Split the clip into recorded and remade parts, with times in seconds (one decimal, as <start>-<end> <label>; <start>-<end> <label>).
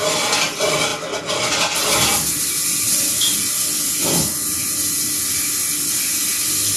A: 0.0-6.8 recorded